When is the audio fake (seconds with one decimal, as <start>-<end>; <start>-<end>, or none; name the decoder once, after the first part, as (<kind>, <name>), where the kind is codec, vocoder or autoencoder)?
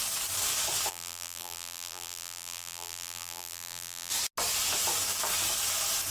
0.9-4.1 (vocoder, BigVGAN v2)